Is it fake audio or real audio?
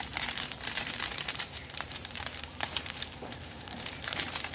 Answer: fake